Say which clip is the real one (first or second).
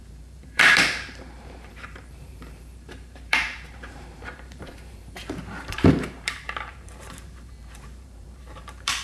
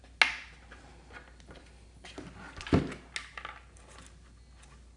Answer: second